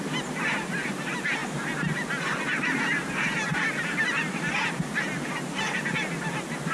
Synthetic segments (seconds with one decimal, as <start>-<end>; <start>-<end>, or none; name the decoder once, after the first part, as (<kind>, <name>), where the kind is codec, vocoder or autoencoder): none